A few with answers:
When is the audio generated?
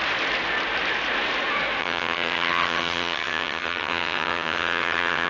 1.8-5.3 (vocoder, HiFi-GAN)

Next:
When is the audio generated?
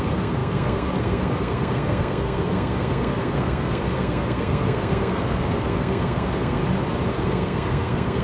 0.0-6.6 (codec, SNAC); 7.1-8.2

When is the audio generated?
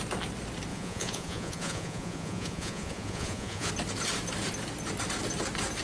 0.7-3.7 (vocoder, Vocos)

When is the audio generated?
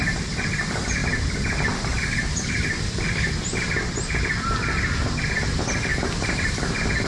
none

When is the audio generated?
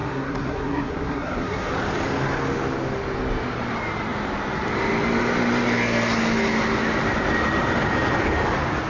0.0-1.7 (codec, SNAC)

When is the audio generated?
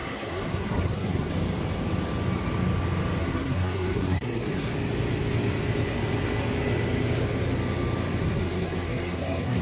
0.0-1.3 (codec, SNAC); 3.2-4.7; 8.2-9.6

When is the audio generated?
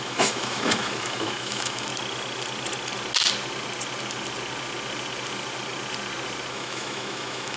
0.0-1.9 (autoencoder, DAC-VAE); 6.5-7.6